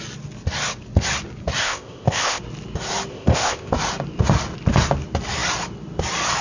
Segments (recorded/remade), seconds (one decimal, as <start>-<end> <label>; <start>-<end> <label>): 0.0-1.6 recorded; 1.6-2.4 remade; 2.4-3.1 recorded; 3.1-3.7 remade; 3.7-6.4 recorded